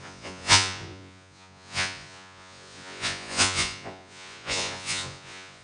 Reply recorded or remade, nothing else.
remade